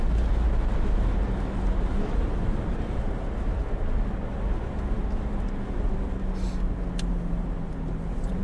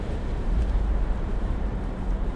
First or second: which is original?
first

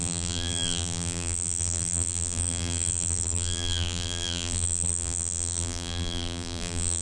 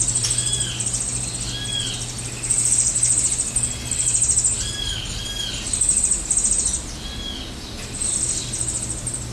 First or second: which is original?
second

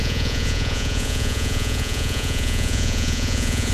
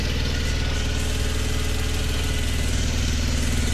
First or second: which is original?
second